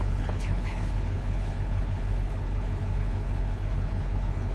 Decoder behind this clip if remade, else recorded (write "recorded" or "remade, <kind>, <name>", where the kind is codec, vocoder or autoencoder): remade, codec, HILCodec